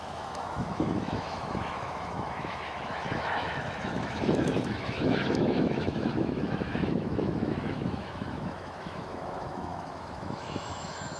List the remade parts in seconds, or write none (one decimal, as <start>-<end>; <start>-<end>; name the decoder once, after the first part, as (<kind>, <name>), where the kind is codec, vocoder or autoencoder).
0.0-11.2 (autoencoder, DAC-VAE)